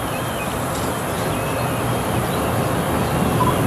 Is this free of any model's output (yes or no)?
yes